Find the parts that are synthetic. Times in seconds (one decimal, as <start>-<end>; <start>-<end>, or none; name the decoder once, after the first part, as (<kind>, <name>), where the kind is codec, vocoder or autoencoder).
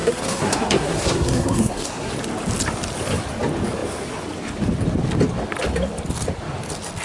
0.0-2.1 (codec, SNAC)